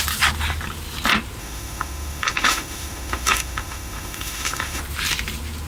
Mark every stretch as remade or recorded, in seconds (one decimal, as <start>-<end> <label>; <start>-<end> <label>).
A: 0.0-1.4 recorded; 1.4-4.8 remade; 4.8-5.7 recorded